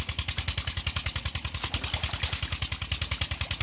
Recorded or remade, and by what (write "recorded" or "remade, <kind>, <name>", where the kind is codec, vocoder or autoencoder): recorded